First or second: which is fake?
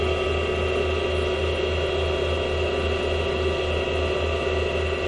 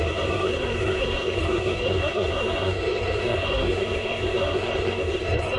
second